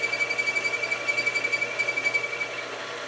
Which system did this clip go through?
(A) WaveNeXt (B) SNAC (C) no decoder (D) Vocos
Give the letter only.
C